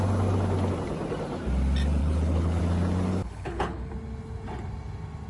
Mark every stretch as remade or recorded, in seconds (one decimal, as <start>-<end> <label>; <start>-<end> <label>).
0.0-2.0 recorded; 2.0-2.6 remade; 2.6-3.1 recorded; 3.1-3.9 remade; 3.9-5.3 recorded